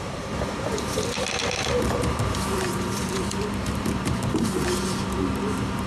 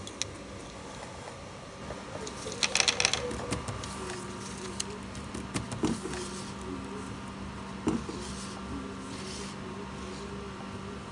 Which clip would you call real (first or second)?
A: second